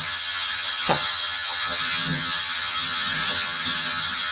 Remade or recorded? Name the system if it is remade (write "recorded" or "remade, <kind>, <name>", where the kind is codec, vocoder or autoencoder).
remade, vocoder, HiFi-GAN